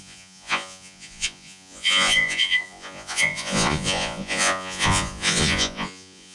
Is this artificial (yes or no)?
yes